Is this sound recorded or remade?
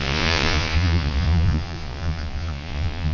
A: remade